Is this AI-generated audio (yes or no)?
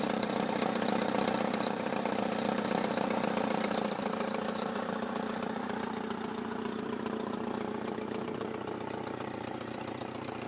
yes